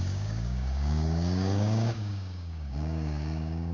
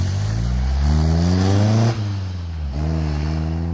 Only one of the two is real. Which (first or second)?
second